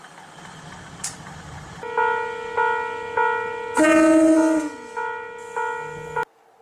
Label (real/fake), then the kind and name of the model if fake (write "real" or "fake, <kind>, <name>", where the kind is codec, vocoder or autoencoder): real